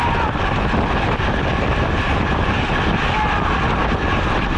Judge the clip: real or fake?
real